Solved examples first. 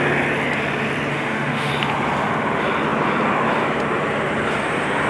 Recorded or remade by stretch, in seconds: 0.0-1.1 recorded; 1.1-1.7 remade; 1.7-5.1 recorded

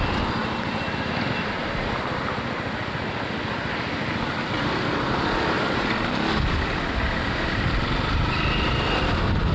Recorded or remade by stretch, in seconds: 0.0-9.5 recorded